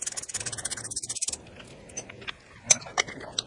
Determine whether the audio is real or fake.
real